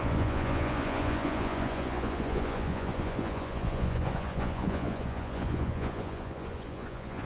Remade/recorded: remade